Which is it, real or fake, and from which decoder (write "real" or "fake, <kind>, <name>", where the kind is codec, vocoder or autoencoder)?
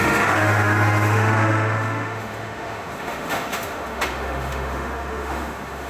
fake, autoencoder, DAC-VAE